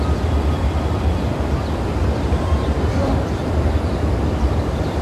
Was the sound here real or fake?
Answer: fake